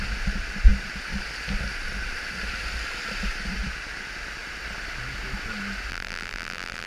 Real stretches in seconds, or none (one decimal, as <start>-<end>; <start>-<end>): 0.0-5.9